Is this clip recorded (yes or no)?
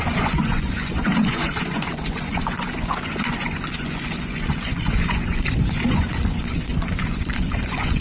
no